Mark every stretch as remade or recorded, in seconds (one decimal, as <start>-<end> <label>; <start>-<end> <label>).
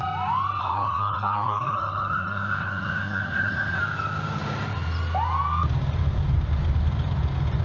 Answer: 0.0-0.6 recorded; 0.6-3.8 remade; 3.8-7.6 recorded